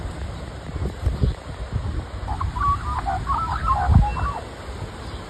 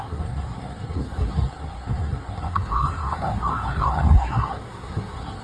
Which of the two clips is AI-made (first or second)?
second